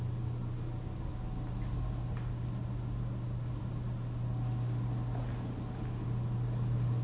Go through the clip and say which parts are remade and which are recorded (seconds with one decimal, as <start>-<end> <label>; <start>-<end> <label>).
0.0-7.0 recorded